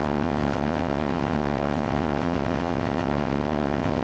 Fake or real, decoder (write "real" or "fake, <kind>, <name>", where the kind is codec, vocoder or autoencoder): fake, vocoder, WaveNeXt